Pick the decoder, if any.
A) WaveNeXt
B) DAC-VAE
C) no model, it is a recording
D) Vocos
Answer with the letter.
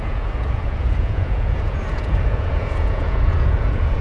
D